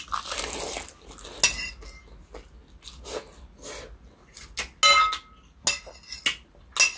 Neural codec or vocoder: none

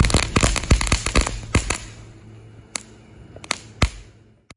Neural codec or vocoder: none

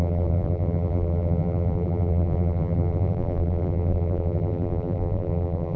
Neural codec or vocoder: vocoder, BigVGAN v2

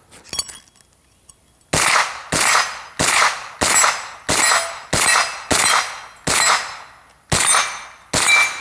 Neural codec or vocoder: none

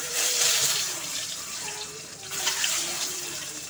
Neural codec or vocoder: vocoder, BigVGAN v2